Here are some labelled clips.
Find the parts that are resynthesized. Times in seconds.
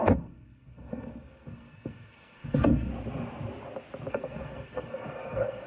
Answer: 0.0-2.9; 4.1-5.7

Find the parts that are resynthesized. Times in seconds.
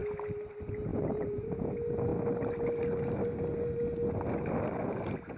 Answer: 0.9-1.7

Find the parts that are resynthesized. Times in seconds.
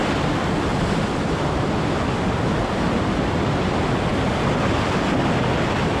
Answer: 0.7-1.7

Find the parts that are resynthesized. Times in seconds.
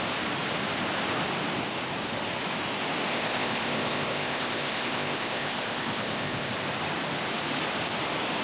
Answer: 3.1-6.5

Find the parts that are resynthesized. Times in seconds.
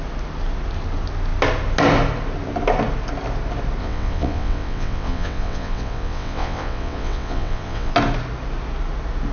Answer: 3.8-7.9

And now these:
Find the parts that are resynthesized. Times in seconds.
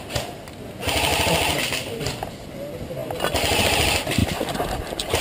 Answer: 1.1-2.3